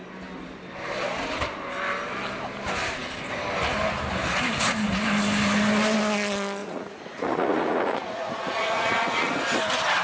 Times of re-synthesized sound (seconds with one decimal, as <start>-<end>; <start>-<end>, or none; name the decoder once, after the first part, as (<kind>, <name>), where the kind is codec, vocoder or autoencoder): 6.6-9.3 (vocoder, Vocos)